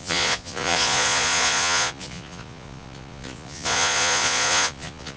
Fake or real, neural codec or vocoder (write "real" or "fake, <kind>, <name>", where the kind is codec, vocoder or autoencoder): fake, vocoder, Vocos